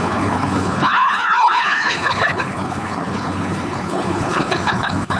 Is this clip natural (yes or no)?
no